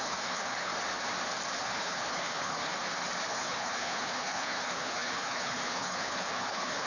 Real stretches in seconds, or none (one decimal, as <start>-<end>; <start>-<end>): 0.7-1.6; 2.7-3.3